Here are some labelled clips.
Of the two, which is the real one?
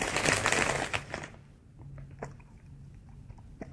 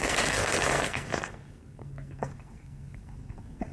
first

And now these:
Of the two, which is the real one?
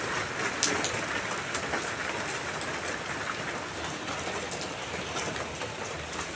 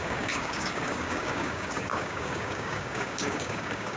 first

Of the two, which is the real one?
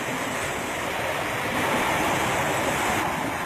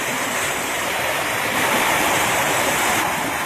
first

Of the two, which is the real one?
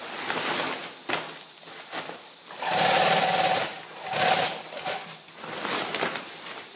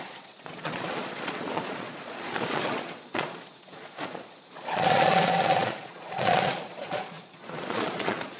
first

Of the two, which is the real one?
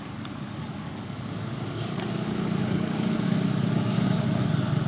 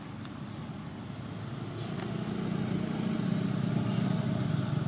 second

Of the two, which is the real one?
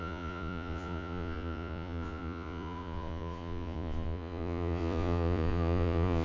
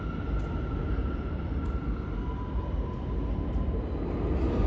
second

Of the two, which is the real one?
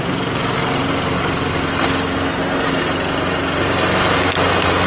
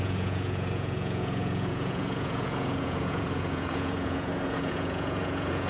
first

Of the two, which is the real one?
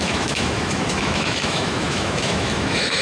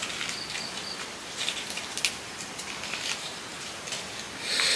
second